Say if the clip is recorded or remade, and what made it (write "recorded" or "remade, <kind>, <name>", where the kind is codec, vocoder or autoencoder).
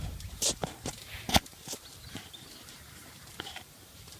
remade, vocoder, BigVGAN v2